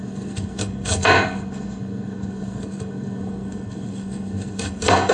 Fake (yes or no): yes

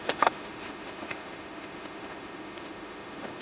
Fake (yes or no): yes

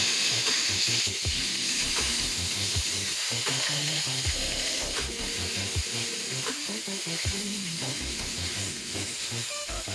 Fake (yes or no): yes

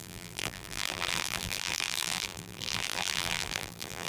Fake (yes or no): yes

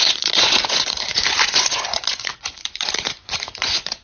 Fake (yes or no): yes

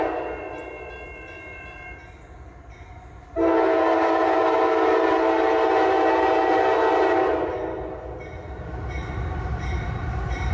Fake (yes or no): no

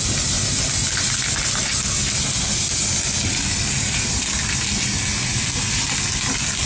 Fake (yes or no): no